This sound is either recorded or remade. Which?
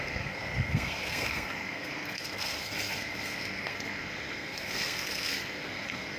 remade